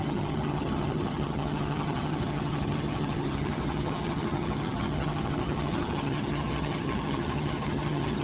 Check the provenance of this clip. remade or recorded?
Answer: remade